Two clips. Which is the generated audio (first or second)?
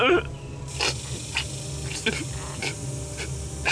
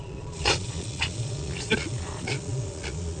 second